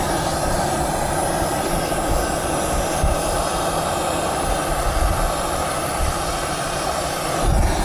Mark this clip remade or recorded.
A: remade